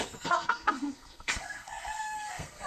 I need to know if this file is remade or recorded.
remade